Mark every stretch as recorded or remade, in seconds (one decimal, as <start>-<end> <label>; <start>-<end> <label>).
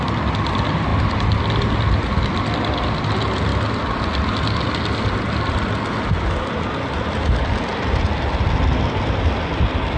0.0-10.0 recorded